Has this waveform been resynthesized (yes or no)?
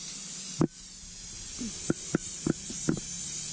no